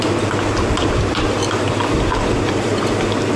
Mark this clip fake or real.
real